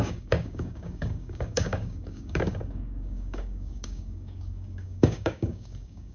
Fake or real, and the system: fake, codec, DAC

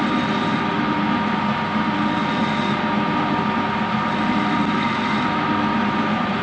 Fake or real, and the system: real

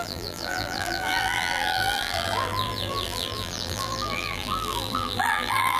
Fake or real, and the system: fake, vocoder, BigVGAN v2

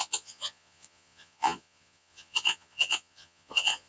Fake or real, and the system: fake, vocoder, Vocos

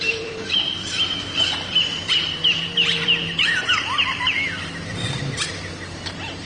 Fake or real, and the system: fake, vocoder, BigVGAN v2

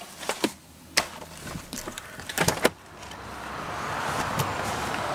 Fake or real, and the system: real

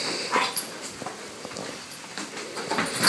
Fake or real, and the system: real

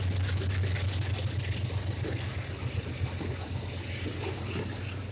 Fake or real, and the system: real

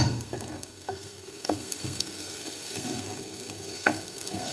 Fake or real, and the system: fake, codec, SNAC